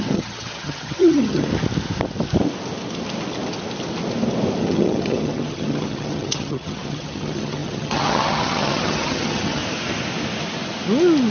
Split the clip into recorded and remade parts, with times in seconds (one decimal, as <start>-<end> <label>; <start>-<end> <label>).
0.0-1.5 remade; 1.5-4.6 recorded; 4.6-9.6 remade; 9.6-11.3 recorded